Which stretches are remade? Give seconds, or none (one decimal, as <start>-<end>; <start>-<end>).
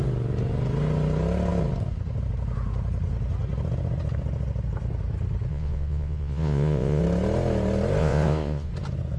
5.5-7.0; 8.0-8.7